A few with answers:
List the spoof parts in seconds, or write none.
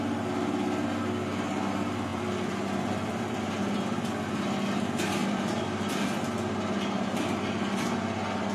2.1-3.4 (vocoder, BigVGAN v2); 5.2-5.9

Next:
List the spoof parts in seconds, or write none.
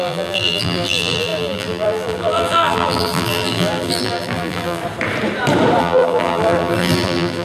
0.0-4.8 (vocoder, BigVGAN v2); 5.8-7.4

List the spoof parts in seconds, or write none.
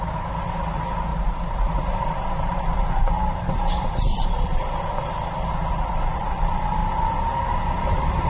0.0-3.0 (vocoder, BigVGAN v2); 6.1-6.8; 7.5-8.3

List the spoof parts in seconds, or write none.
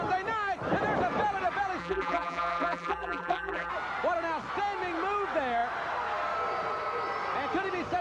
1.8-3.7 (vocoder, BigVGAN v2)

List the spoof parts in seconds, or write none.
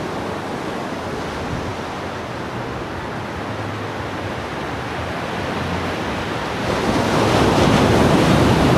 none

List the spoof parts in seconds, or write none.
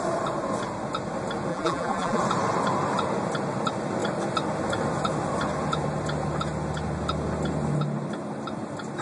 1.5-2.2 (vocoder, BigVGAN v2)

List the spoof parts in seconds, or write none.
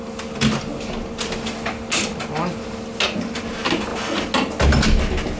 none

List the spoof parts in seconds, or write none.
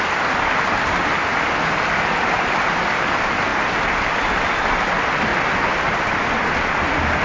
0.0-5.3 (vocoder, BigVGAN v2); 6.2-7.2